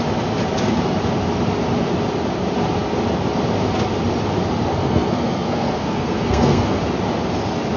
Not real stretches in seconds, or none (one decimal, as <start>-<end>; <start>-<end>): 4.7-6.8